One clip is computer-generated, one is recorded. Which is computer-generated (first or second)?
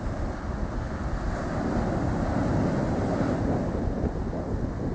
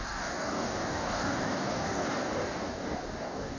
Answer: second